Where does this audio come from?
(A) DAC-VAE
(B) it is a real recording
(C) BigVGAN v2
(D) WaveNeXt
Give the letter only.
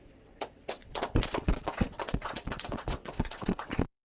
D